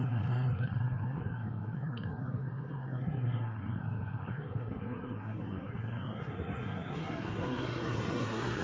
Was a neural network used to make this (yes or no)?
yes